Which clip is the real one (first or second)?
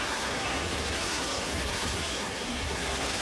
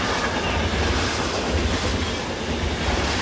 second